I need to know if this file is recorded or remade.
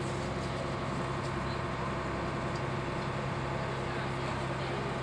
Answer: recorded